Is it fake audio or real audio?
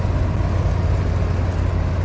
real